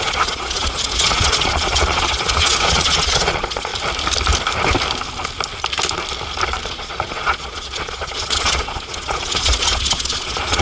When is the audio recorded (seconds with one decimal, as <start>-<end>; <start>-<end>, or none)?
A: 3.7-6.6

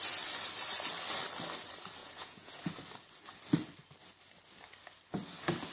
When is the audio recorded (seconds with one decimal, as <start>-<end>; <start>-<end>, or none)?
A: 0.0-2.0; 2.6-5.7

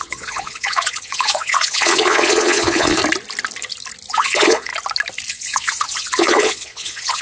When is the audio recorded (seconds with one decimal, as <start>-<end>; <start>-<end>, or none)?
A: 3.0-4.1; 4.7-5.3

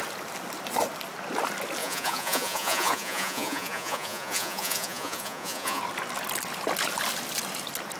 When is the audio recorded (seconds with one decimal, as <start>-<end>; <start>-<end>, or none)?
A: 0.0-1.8; 5.8-8.0

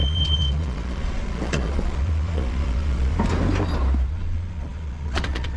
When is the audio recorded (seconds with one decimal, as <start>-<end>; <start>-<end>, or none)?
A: 3.1-4.1

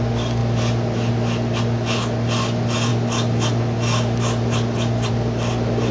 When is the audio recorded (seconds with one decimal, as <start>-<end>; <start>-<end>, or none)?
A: 0.0-5.9

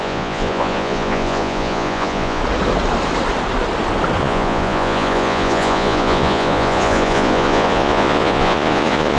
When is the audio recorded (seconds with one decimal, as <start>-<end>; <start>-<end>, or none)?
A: 2.4-4.2